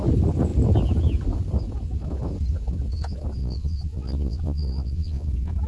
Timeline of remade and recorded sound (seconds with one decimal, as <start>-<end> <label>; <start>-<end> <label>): 0.0-3.4 recorded; 3.4-5.3 remade; 5.3-5.7 recorded